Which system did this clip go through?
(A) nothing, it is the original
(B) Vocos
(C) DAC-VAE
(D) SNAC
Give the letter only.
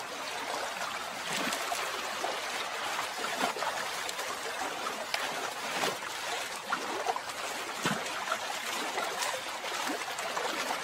A